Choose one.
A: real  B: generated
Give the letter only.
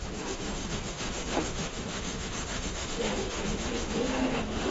B